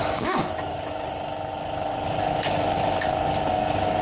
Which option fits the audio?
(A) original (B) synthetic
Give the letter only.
B